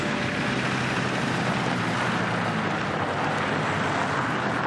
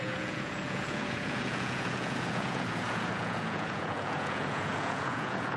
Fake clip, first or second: second